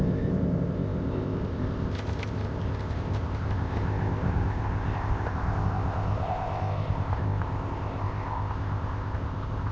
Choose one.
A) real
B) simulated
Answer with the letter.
B